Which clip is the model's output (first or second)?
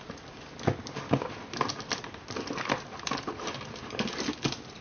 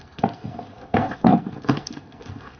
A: second